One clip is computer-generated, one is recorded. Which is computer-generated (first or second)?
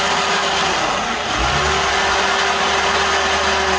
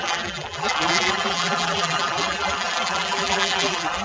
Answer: second